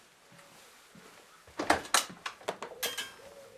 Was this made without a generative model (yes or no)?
yes